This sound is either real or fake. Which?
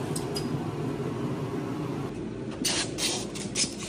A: real